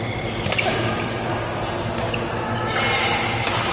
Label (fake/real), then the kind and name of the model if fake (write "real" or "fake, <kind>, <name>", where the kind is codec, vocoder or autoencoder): real